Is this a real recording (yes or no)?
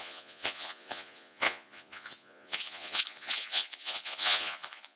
no